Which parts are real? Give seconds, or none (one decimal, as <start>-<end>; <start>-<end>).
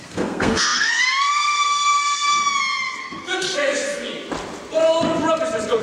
2.4-3.0; 4.1-5.8